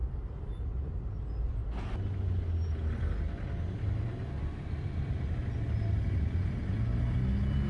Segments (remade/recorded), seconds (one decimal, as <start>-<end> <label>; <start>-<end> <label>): 0.0-1.2 remade; 1.2-7.7 recorded